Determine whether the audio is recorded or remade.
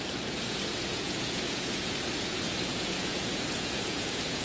remade